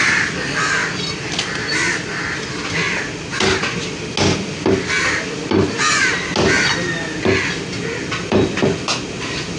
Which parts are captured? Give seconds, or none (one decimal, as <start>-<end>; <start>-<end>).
0.0-0.8; 2.7-9.6